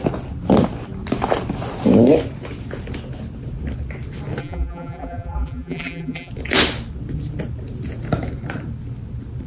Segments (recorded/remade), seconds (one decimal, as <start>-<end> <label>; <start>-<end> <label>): 0.0-4.4 recorded; 4.4-6.3 remade; 6.3-9.5 recorded